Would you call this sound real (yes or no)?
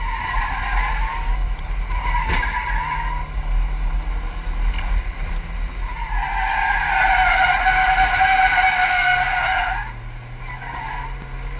yes